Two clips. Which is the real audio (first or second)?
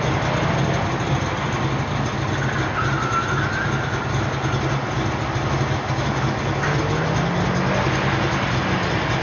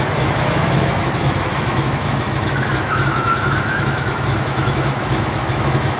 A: first